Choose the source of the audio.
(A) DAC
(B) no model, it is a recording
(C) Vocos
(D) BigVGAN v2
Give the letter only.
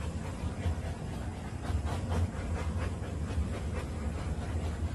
D